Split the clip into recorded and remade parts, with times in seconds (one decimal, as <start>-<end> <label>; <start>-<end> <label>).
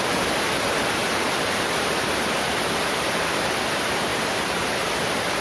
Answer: 0.0-1.0 recorded; 1.0-2.6 remade; 2.6-4.1 recorded; 4.1-5.4 remade